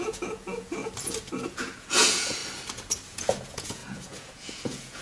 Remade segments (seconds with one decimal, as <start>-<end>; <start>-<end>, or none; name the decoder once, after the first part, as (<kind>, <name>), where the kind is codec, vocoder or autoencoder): 0.0-0.8 (vocoder, Vocos); 1.5-2.4; 3.1-5.0